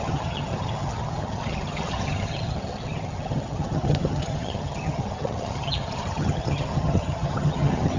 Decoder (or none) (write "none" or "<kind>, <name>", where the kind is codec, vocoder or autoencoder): vocoder, HiFi-GAN